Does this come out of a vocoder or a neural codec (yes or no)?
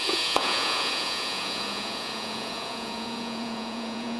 yes